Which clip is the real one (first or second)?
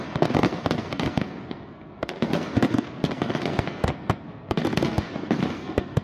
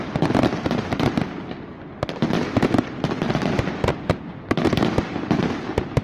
second